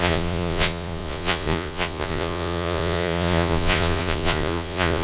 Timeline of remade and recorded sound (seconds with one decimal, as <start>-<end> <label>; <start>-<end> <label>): 0.0-5.0 remade